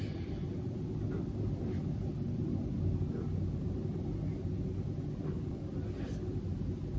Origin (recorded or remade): recorded